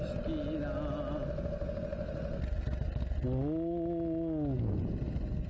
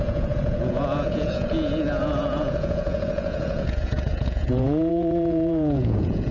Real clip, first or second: first